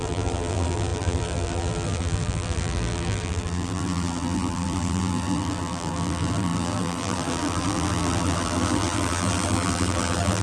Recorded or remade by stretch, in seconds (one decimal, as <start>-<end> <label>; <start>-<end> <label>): 0.0-10.4 remade